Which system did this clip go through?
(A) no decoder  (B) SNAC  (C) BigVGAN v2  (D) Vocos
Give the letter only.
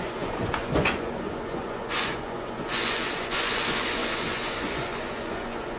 D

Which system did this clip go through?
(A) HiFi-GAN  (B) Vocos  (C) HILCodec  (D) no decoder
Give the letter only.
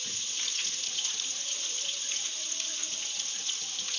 B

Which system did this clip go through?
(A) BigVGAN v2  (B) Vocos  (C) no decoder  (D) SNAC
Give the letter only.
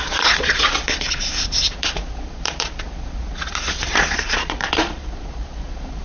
B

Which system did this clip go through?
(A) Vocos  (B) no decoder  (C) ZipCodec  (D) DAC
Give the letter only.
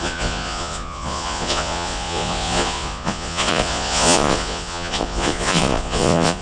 A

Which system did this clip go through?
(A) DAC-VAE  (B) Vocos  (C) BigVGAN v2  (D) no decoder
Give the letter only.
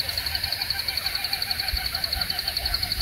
D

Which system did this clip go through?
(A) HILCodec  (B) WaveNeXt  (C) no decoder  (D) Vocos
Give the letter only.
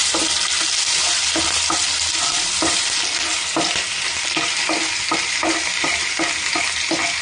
C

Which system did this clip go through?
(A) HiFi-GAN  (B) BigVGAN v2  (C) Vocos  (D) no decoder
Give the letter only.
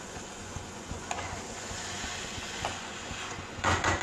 C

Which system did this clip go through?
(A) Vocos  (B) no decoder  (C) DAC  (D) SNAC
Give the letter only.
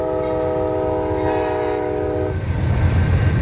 B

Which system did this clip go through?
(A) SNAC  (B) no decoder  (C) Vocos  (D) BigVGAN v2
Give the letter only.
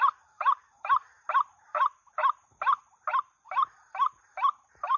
B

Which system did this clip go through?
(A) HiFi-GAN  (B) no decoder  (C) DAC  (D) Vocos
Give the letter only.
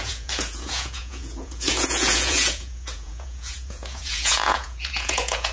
D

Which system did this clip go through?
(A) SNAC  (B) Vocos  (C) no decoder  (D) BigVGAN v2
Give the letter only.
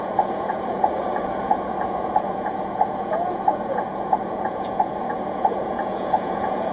B